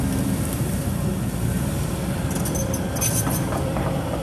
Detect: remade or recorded remade